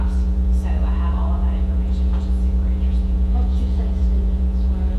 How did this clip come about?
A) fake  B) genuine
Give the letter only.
A